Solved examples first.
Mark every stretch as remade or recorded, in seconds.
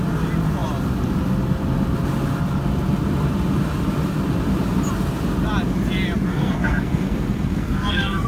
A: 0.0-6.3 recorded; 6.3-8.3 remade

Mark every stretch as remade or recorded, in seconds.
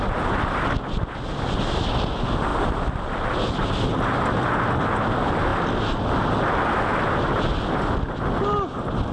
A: 0.0-9.1 recorded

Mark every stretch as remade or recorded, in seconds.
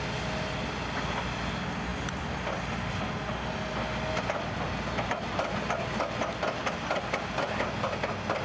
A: 0.0-8.4 recorded